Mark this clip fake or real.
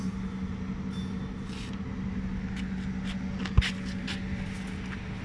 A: real